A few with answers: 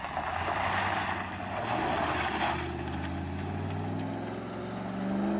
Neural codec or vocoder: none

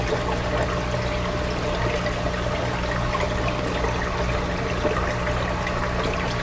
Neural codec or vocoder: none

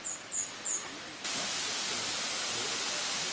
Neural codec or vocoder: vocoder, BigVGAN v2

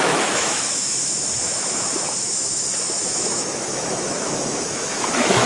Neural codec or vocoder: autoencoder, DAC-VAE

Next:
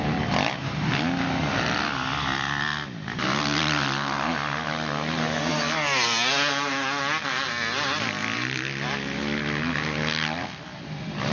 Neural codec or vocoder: none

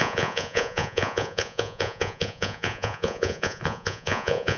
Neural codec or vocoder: vocoder, Vocos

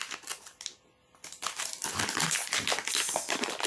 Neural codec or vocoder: none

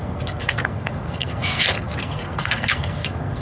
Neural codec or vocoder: codec, SNAC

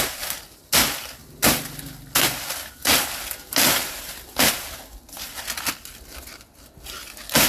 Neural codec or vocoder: none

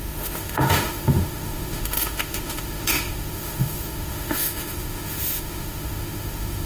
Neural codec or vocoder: autoencoder, DAC-VAE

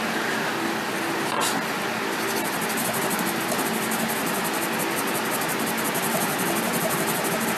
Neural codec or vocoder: none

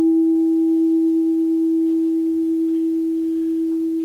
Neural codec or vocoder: none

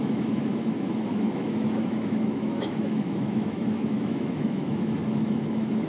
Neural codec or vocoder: autoencoder, DAC-VAE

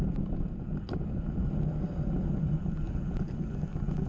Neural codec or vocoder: none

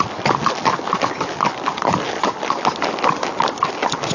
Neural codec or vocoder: none